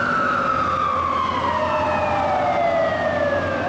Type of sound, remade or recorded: recorded